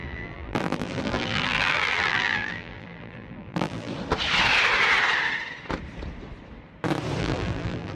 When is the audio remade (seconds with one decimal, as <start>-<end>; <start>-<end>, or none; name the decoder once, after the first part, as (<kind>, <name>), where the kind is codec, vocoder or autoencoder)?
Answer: 0.0-3.9 (vocoder, BigVGAN v2); 7.2-8.0